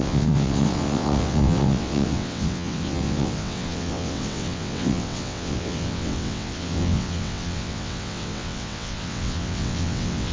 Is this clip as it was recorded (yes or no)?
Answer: no